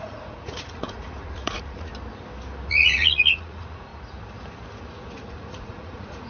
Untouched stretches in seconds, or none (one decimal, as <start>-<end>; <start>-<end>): 1.9-2.7; 3.9-4.9